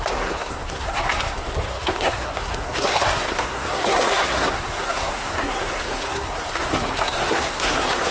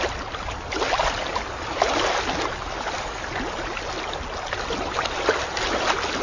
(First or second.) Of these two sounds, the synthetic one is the first